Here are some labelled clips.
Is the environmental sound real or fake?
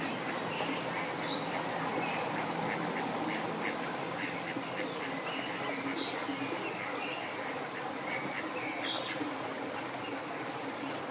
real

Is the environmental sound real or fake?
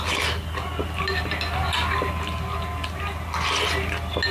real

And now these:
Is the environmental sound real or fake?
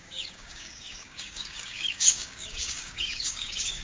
fake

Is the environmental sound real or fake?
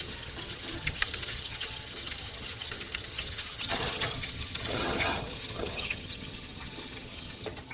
fake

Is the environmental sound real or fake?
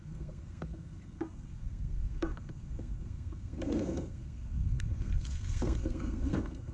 fake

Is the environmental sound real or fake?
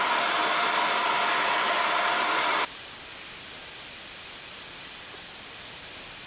real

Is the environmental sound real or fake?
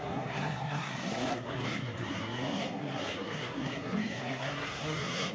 fake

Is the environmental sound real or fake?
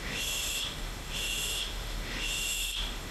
fake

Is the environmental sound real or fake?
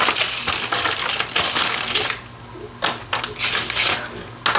real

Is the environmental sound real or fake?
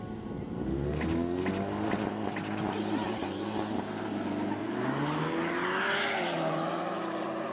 real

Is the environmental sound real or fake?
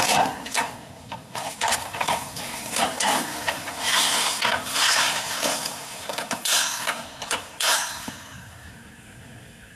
fake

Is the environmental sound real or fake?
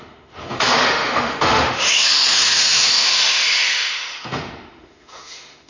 fake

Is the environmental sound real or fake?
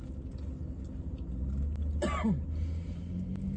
real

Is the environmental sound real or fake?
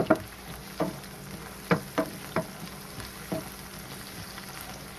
real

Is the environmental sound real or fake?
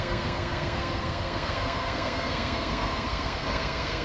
fake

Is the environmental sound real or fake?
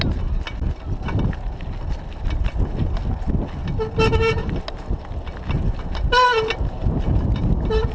real